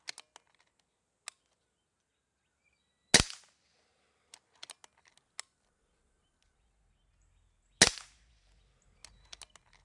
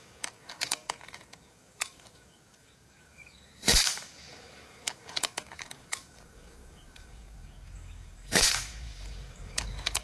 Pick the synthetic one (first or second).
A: second